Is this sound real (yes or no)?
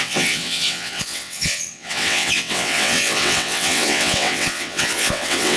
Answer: no